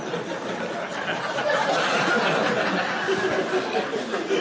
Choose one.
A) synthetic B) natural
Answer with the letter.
B